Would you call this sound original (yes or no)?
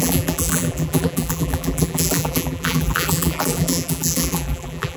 no